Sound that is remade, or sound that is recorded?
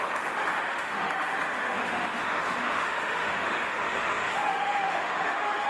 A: remade